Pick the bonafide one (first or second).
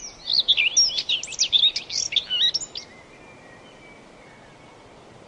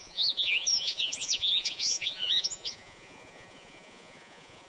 first